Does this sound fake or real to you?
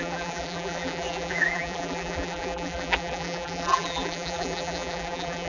fake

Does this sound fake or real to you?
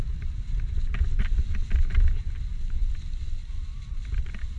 real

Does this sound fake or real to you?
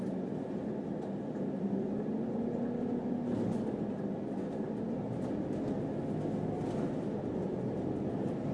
real